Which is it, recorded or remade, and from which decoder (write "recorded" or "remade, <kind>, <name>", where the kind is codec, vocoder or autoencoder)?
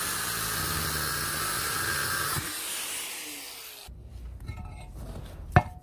recorded